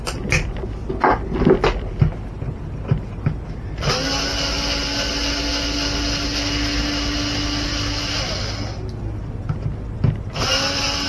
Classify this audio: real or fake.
real